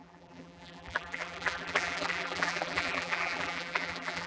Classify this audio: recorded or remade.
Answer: remade